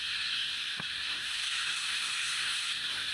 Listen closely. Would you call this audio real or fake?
fake